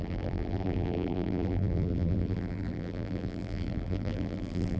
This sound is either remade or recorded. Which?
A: remade